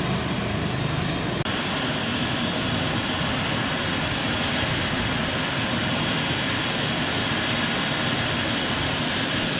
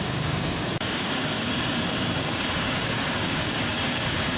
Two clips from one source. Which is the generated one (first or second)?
second